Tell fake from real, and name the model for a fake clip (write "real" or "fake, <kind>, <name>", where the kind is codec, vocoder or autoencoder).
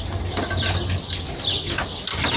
real